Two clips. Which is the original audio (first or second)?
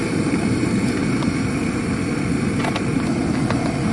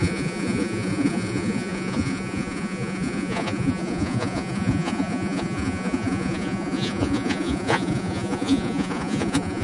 first